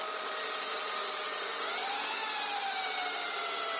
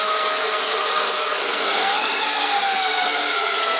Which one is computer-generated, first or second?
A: second